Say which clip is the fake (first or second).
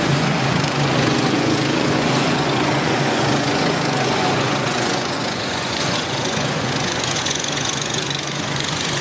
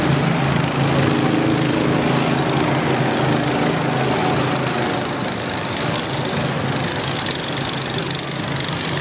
first